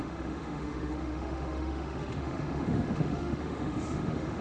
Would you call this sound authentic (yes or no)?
no